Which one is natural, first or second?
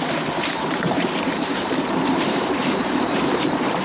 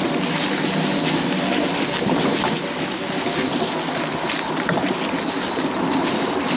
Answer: second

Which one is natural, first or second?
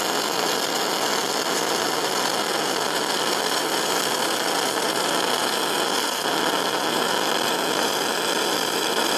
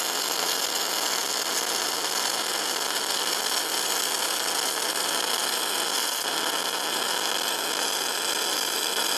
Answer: second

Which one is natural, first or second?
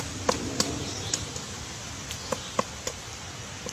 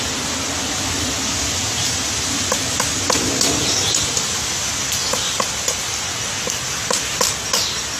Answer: second